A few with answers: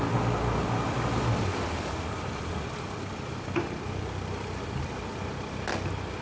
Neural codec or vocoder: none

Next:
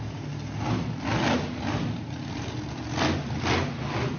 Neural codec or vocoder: none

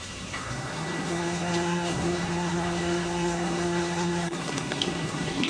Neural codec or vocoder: codec, SNAC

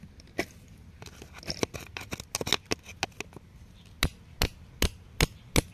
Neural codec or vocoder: none